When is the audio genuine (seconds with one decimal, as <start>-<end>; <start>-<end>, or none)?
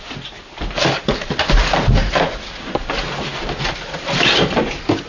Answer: 0.0-5.1